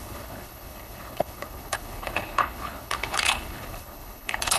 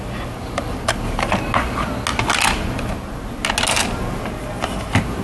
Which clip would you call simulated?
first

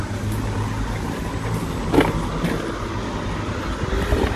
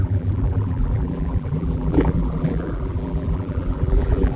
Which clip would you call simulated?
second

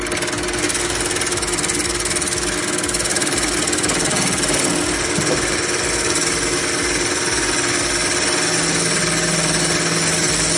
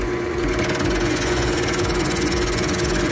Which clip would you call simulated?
second